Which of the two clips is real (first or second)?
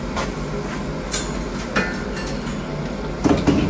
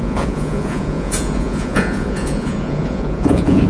first